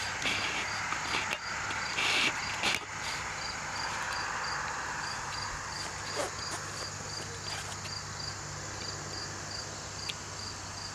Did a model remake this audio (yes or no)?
no